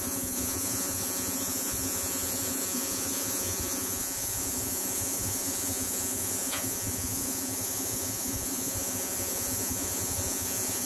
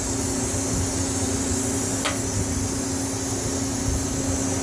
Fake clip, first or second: first